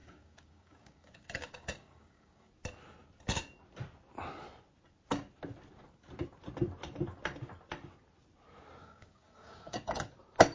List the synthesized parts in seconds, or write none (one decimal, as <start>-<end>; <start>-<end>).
0.0-2.5; 8.8-10.1